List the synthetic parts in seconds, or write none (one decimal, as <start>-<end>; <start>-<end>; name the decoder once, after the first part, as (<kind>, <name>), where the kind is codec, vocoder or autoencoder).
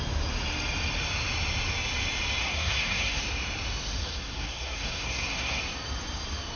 2.4-3.2 (codec, SNAC); 4.0-5.6